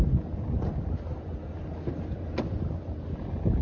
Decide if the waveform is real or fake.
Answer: real